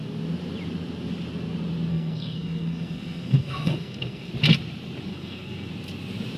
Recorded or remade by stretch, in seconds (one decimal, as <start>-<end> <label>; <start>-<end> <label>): 0.0-1.9 recorded; 1.9-4.3 remade; 4.3-5.1 recorded; 5.1-5.7 remade; 5.7-6.4 recorded